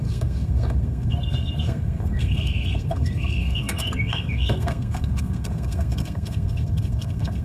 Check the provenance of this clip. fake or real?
fake